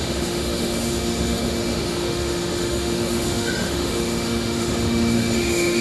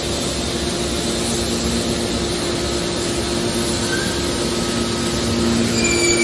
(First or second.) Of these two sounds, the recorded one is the second